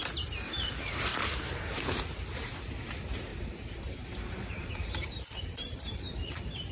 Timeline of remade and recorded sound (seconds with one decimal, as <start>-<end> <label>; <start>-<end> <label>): 0.0-1.1 recorded; 1.1-2.7 remade; 2.7-3.3 recorded; 3.3-6.7 remade